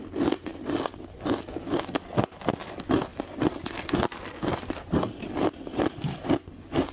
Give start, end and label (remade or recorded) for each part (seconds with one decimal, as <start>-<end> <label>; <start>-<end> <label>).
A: 0.0-6.9 recorded